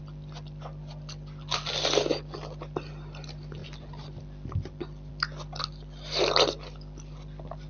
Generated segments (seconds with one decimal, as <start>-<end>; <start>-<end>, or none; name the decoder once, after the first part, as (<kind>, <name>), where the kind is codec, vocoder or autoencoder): none